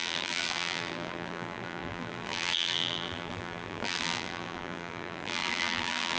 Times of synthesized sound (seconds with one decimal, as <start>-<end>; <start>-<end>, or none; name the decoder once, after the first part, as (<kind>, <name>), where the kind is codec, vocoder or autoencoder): 0.0-6.2 (vocoder, BigVGAN v2)